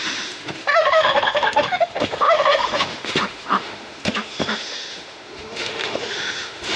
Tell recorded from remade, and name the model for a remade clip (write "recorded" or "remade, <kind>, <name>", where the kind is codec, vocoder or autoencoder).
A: remade, autoencoder, DAC-VAE